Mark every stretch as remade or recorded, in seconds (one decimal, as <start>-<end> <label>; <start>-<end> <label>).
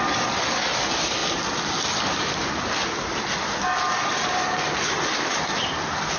0.0-6.2 recorded